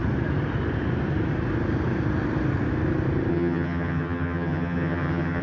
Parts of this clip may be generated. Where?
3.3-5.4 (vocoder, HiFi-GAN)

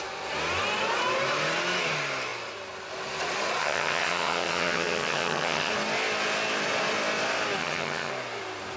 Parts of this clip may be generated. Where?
3.6-5.7 (vocoder, HiFi-GAN); 7.6-8.1

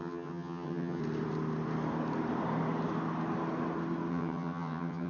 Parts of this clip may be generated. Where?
0.0-1.0 (vocoder, HiFi-GAN); 4.1-5.1

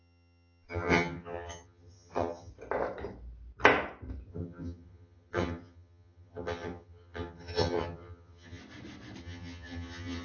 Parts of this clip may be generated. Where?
0.0-2.5 (vocoder, HiFi-GAN); 4.3-8.6; 9.2-10.2

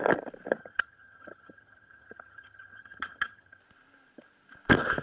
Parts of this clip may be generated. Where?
0.6-3.6 (vocoder, HiFi-GAN)

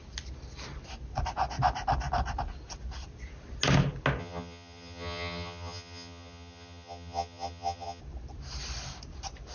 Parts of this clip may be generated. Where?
4.2-8.0 (vocoder, HiFi-GAN)